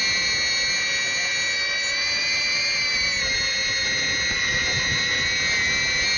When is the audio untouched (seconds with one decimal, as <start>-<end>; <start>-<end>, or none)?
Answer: 0.0-6.2